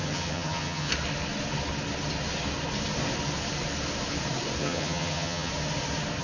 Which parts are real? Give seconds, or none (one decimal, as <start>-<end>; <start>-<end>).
0.9-4.6; 5.5-6.2